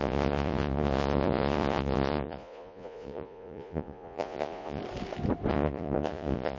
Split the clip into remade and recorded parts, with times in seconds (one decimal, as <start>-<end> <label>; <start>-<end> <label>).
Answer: 0.0-4.8 remade; 4.8-5.5 recorded; 5.5-6.6 remade